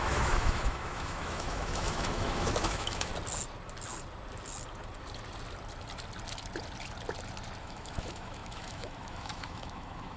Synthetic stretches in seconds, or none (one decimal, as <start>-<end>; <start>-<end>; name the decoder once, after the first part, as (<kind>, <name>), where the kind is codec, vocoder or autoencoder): 0.0-3.1 (autoencoder, DAC-VAE); 7.6-10.2